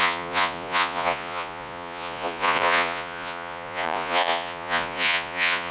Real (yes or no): no